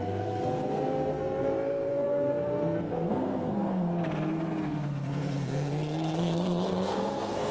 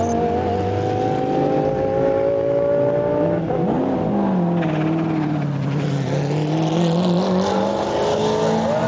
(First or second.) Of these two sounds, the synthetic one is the first